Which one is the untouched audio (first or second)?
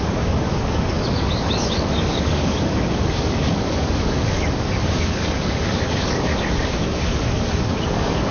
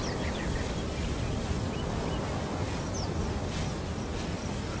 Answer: second